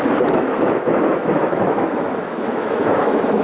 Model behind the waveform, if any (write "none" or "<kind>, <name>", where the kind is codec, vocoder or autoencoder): autoencoder, DAC-VAE